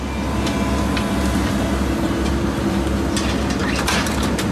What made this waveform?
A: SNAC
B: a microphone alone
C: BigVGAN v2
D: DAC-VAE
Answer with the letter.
B